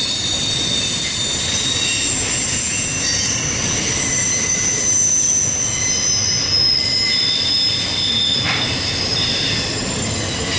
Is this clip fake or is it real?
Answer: real